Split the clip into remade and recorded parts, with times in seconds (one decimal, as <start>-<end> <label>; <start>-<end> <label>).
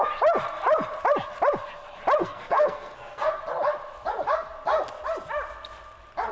0.0-2.2 recorded; 2.2-3.4 remade; 3.4-6.3 recorded